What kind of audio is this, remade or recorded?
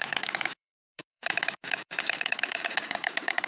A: remade